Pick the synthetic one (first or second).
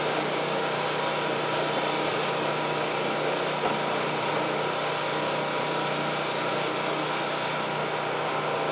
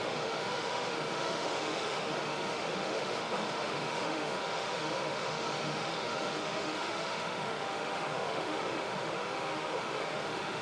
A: second